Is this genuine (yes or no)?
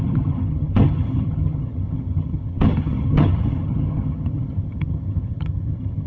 no